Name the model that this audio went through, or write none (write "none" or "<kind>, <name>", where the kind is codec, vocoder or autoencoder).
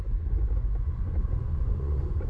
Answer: vocoder, Vocos